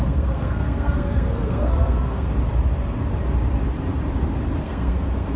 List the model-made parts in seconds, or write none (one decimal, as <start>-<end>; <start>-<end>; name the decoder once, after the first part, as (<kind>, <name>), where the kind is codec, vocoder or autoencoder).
0.0-2.3 (codec, SNAC); 4.6-5.4